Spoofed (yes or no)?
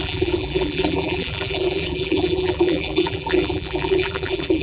yes